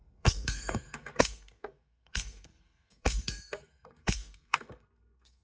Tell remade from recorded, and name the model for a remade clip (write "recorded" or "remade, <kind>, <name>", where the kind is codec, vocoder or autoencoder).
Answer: remade, codec, SNAC